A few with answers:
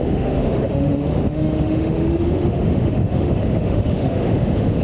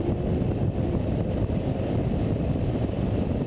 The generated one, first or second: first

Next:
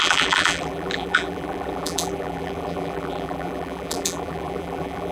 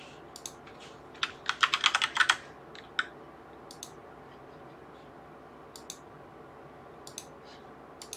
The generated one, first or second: first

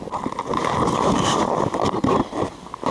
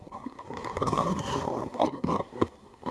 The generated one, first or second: second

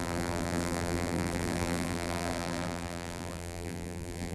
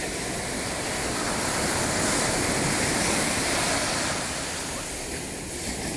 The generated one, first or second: first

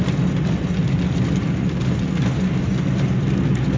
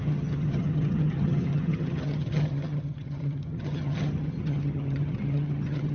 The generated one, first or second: second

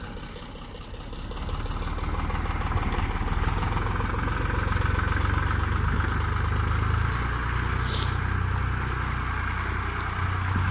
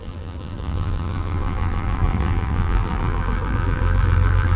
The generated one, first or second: second